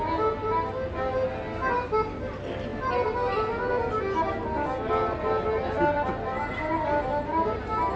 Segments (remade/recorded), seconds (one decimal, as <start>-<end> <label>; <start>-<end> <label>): 0.0-8.0 recorded

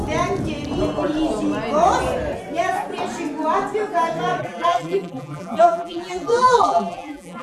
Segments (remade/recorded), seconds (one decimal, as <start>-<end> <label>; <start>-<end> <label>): 0.0-4.4 recorded; 4.4-7.4 remade

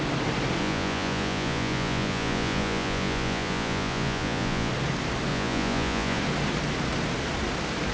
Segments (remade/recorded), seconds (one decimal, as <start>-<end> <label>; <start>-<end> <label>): 0.0-0.6 recorded; 0.6-4.7 remade; 4.7-5.3 recorded; 5.3-6.2 remade; 6.2-7.9 recorded

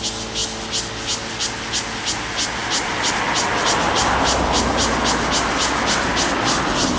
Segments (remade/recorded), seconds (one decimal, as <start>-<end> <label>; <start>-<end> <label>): 0.0-7.0 recorded

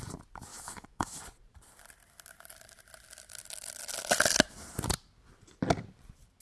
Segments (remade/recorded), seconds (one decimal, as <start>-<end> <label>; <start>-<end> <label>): 0.0-0.5 recorded; 0.5-1.2 remade; 1.2-6.4 recorded